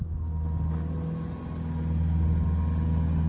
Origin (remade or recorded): recorded